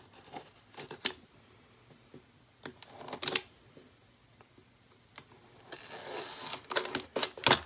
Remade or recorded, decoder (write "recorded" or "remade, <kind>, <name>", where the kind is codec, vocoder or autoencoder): recorded